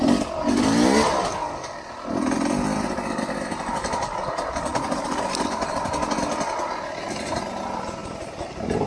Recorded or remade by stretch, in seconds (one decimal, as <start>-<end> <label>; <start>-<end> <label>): 0.0-4.7 recorded; 4.7-5.9 remade; 5.9-8.0 recorded; 8.0-8.9 remade